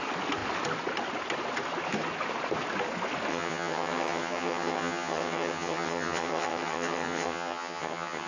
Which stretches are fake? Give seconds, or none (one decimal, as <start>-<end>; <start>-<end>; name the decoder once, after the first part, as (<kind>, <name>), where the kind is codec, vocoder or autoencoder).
3.3-8.3 (vocoder, HiFi-GAN)